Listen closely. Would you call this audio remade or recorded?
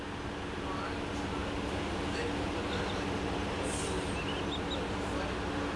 recorded